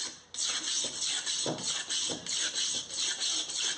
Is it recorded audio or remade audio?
recorded